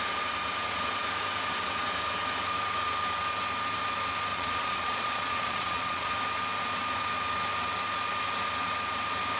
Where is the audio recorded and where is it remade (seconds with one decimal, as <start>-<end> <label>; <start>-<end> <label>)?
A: 0.0-4.3 recorded; 4.3-6.1 remade; 6.1-9.4 recorded